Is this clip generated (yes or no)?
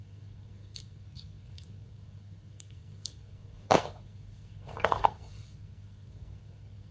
yes